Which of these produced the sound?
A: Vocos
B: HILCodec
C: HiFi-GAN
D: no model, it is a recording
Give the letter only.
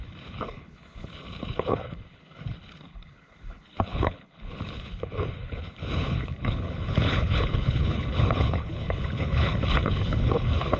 B